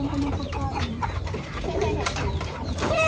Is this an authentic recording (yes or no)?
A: no